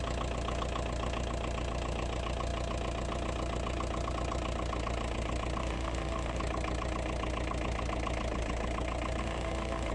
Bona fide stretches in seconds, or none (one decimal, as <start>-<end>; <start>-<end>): 0.0-5.6; 6.4-9.2